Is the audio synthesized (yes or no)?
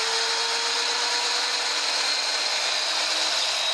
no